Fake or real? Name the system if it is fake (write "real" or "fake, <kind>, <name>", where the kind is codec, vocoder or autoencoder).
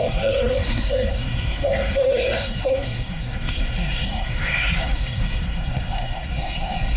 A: fake, codec, SNAC